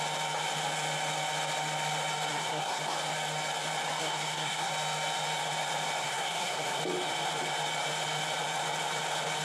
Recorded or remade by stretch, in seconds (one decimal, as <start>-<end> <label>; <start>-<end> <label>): 0.0-2.3 recorded; 2.3-2.8 remade; 2.8-4.0 recorded; 4.0-4.7 remade; 4.7-6.0 recorded; 6.0-6.8 remade; 6.8-9.4 recorded